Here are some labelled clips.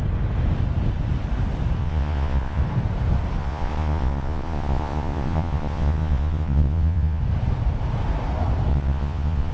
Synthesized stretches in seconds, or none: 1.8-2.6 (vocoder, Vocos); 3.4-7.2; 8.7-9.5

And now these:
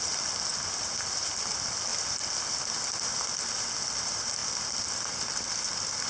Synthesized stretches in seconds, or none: none

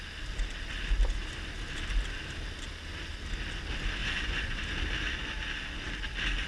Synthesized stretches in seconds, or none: 4.0-4.6 (vocoder, Vocos)

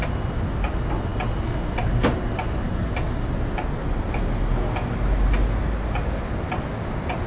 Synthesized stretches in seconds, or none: none

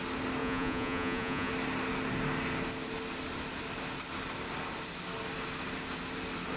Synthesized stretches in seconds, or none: 0.4-1.5 (vocoder, Vocos)

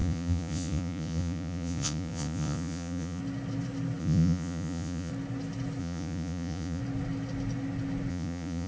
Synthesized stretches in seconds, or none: 0.0-3.2 (vocoder, Vocos); 4.0-5.1; 5.8-6.8; 8.1-8.7